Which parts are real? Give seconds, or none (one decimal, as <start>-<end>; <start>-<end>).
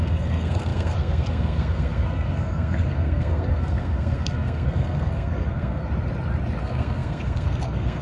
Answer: 5.8-6.6